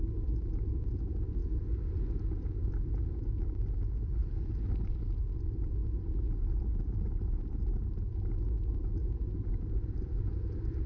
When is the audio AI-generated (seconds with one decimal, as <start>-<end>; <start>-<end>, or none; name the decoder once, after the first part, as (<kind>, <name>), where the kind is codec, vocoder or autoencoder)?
0.0-4.2 (vocoder, BigVGAN v2); 4.9-5.8; 6.6-8.1; 9.1-10.9